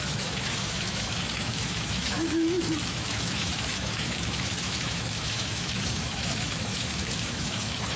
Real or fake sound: fake